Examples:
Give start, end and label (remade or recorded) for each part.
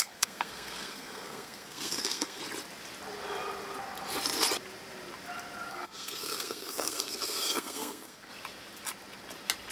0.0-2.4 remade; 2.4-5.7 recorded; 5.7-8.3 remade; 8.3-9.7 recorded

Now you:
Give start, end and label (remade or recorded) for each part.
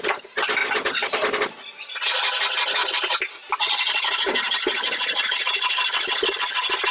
0.0-6.9 recorded